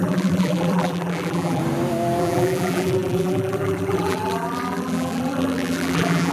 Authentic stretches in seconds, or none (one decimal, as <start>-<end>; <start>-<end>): 1.6-2.2